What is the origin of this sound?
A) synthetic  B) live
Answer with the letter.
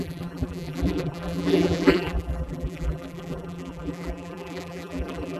A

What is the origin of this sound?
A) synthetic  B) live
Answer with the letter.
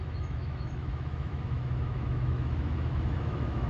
A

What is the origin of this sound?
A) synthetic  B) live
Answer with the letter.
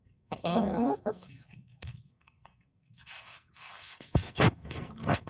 A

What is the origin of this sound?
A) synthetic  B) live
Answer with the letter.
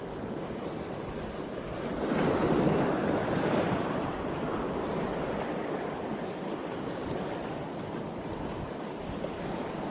B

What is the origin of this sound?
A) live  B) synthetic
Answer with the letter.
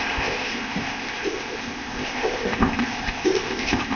B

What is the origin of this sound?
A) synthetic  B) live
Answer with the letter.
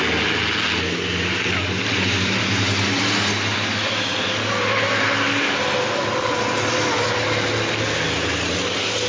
B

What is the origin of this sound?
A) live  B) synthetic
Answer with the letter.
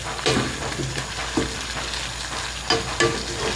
A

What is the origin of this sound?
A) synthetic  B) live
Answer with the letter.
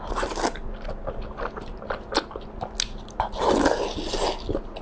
B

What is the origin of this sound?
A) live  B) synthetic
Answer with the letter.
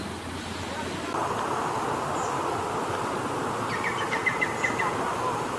A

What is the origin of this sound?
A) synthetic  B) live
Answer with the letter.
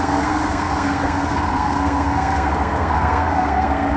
A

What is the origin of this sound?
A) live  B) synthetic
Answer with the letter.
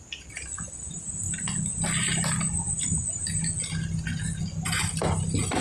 A